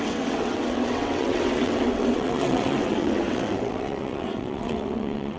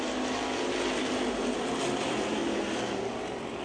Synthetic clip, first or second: first